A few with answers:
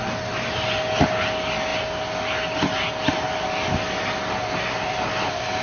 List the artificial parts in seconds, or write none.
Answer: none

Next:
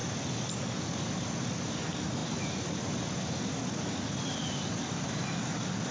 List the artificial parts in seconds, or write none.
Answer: none

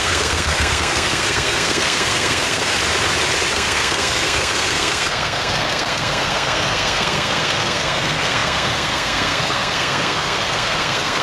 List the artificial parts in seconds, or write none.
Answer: 0.0-2.8 (codec, SNAC); 3.5-11.2